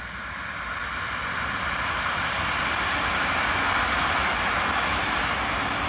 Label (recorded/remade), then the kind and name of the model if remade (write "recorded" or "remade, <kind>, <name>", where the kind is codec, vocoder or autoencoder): recorded